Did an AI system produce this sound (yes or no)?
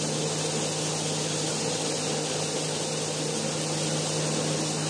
no